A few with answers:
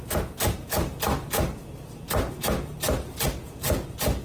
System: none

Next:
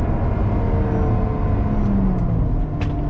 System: none